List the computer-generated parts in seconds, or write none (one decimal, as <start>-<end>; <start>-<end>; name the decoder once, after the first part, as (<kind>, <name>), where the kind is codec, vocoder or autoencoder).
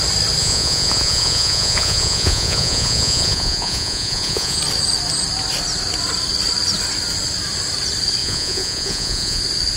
0.4-4.6 (vocoder, Vocos); 8.2-9.4